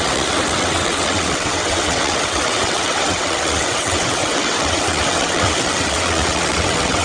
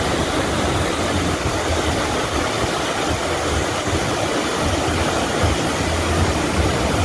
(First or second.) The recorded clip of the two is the second